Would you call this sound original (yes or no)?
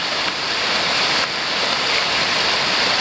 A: yes